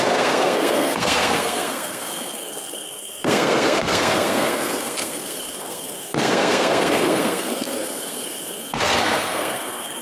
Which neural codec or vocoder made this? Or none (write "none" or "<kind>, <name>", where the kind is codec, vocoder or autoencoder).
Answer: codec, SNAC